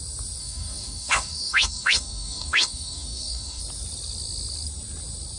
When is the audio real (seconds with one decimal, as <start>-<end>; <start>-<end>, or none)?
0.0-0.4; 3.6-5.4